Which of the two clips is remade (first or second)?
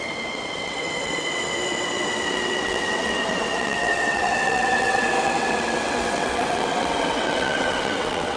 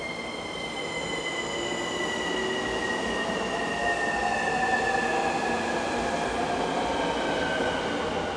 first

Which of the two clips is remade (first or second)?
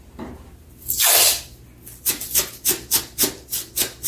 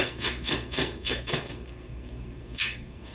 second